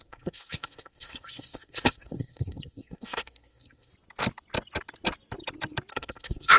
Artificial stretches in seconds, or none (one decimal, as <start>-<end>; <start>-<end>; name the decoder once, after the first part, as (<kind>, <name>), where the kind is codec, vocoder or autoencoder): 0.0-3.9 (codec, SNAC); 5.9-6.6